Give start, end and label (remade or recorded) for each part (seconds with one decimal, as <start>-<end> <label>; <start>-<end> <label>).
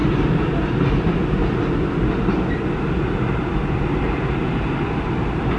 0.0-5.6 recorded